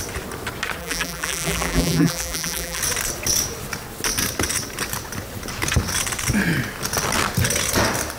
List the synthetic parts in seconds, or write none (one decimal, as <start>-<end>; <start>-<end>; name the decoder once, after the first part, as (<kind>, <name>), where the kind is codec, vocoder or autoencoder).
0.8-2.8 (vocoder, BigVGAN v2)